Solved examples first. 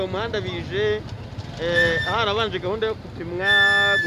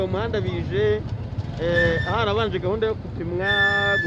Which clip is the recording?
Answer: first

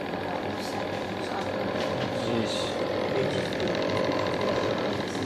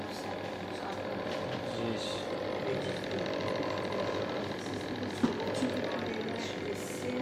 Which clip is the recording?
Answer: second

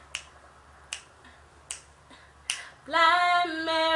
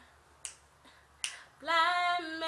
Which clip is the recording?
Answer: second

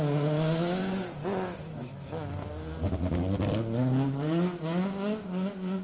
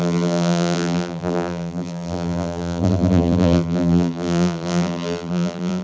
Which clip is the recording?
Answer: first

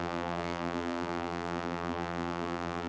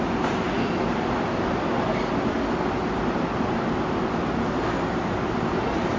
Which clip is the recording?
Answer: second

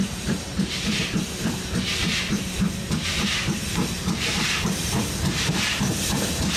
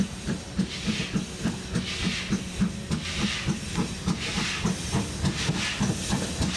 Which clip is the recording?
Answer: second